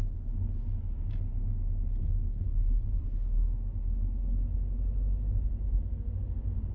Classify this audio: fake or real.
real